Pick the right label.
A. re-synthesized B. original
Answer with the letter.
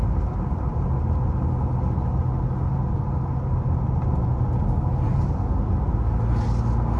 B